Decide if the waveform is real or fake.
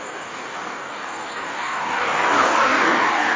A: fake